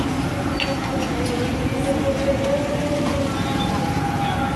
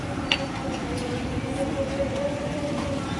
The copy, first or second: second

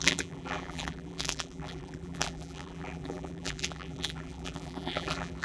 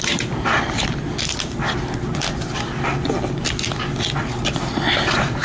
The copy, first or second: first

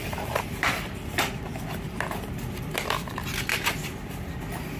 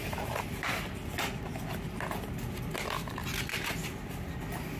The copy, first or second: first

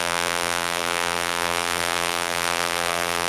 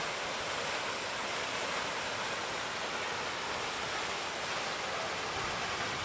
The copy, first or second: first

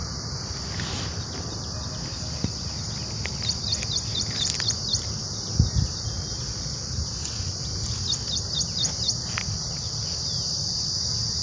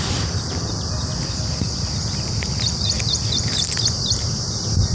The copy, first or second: second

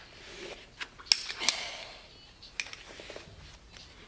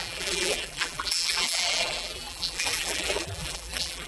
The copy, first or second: second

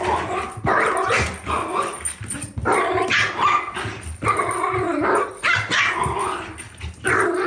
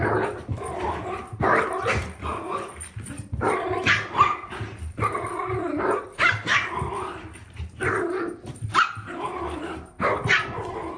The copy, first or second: second